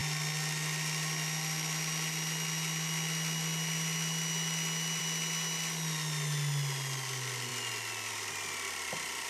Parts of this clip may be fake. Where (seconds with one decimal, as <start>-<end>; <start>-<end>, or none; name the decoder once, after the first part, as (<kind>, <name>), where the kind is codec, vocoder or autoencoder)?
none